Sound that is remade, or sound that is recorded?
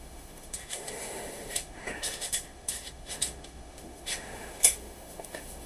remade